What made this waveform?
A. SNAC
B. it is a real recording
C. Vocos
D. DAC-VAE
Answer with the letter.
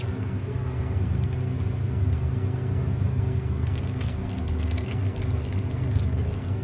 A